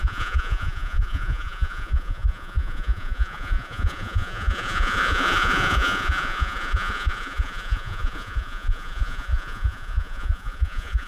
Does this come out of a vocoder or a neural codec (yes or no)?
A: yes